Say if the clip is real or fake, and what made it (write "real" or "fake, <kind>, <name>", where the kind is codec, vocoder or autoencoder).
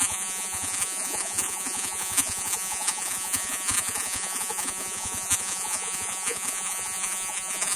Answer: fake, vocoder, Vocos